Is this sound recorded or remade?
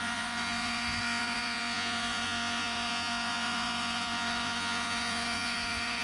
remade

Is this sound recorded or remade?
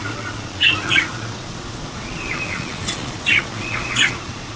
remade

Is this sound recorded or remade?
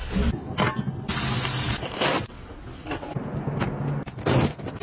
recorded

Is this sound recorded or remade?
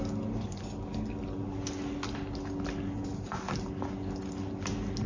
recorded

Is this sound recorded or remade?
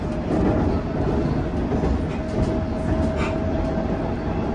recorded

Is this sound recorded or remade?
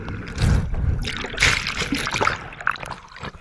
recorded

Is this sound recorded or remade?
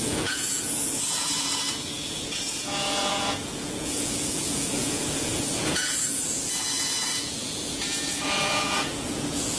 remade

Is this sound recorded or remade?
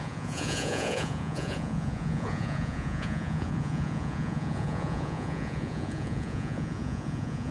remade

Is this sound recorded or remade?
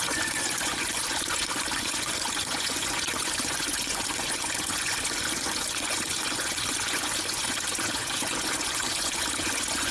remade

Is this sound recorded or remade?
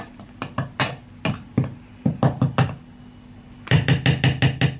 recorded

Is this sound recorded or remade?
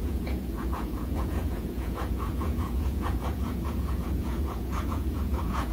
remade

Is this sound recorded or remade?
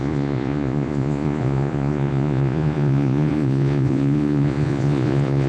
remade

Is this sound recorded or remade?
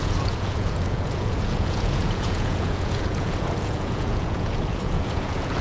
remade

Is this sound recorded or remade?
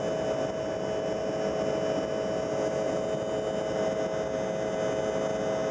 recorded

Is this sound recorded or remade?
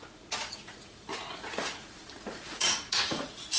remade